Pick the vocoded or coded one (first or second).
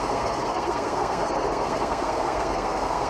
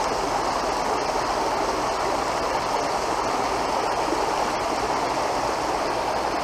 first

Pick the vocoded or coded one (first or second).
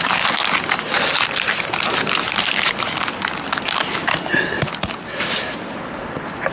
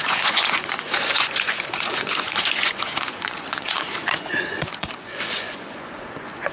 second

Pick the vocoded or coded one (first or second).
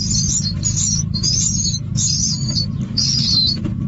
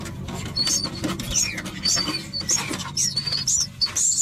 first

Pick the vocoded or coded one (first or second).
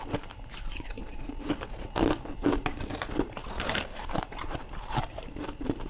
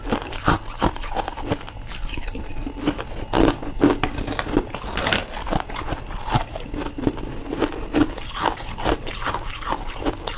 first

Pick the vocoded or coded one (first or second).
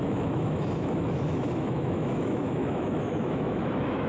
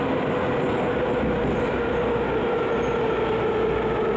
first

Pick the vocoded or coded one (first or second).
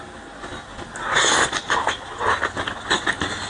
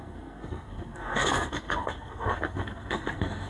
second